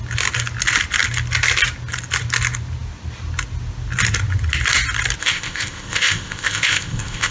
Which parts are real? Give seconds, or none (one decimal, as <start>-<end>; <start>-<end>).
0.0-5.2